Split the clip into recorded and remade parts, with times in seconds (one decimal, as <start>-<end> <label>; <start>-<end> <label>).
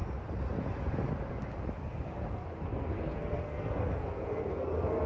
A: 0.0-1.8 recorded; 1.8-5.1 remade